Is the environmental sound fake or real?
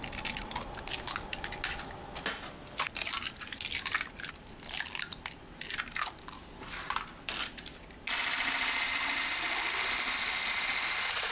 real